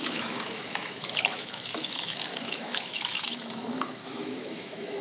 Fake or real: fake